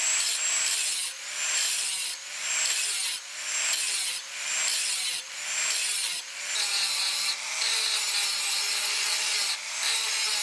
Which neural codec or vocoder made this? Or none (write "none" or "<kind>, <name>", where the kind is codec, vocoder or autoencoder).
vocoder, BigVGAN v2